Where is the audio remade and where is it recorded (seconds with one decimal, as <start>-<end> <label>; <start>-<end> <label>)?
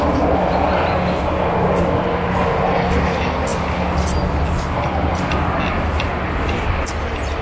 0.0-7.4 recorded